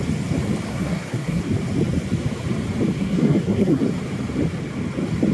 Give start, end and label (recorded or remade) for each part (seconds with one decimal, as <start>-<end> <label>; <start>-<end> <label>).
0.0-0.7 recorded; 0.7-1.4 remade; 1.4-3.0 recorded; 3.0-3.8 remade; 3.8-5.3 recorded